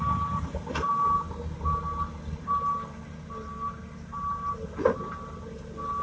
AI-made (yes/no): no